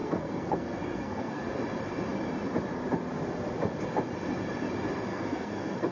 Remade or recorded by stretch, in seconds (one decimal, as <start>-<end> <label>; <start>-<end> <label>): 0.0-1.4 remade; 1.4-5.1 recorded; 5.1-5.9 remade